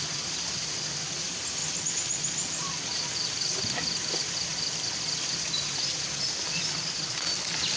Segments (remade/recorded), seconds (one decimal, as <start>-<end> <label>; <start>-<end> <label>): 0.0-7.8 recorded